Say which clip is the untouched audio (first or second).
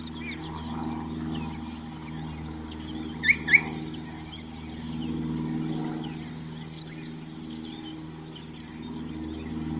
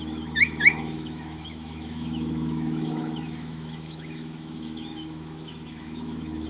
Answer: first